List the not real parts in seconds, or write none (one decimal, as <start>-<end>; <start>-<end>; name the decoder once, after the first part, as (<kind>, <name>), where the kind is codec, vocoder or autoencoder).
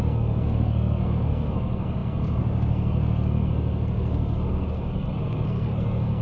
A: 0.0-6.2 (codec, SNAC)